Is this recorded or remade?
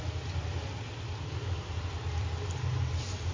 recorded